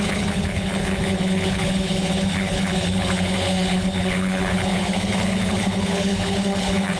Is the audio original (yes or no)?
no